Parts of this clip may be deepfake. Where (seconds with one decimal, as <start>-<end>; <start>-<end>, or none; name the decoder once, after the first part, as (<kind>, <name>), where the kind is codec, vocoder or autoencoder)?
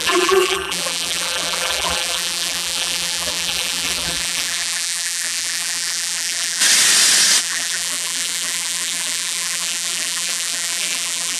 0.0-6.6 (vocoder, BigVGAN v2); 7.4-11.4